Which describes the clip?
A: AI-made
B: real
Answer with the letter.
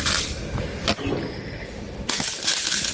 B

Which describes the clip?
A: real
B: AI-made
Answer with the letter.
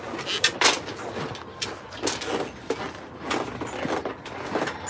A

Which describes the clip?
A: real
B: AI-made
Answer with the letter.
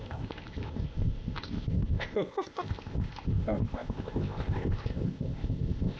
B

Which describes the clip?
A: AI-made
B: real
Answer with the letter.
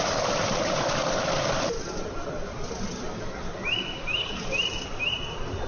B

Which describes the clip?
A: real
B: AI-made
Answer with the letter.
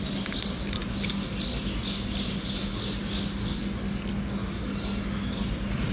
A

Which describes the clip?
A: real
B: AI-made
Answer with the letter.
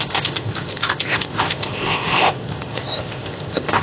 B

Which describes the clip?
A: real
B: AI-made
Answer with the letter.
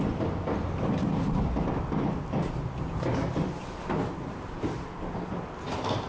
A